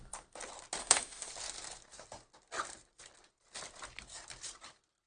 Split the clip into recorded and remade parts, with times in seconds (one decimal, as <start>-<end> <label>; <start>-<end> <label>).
0.0-0.8 recorded; 0.8-1.3 remade; 1.3-5.1 recorded